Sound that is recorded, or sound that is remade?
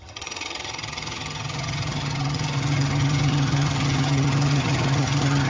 remade